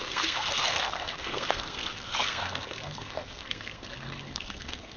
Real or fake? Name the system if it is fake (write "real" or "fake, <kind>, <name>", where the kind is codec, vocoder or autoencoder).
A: fake, codec, SNAC